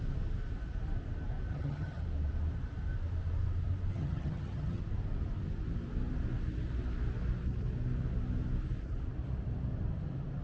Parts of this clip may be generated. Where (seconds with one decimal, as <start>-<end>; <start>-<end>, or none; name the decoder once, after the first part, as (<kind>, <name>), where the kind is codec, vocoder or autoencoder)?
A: 1.5-2.0 (vocoder, HiFi-GAN); 3.9-4.8

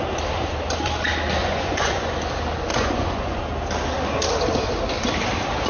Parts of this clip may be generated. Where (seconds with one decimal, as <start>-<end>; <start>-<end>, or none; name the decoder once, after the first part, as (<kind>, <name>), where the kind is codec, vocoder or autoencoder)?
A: 1.4-2.1 (vocoder, Vocos); 2.7-3.4